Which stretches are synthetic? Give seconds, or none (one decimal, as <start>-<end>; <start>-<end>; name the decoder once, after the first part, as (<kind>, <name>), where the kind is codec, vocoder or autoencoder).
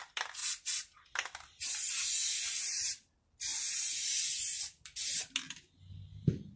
2.5-3.1 (vocoder, BigVGAN v2)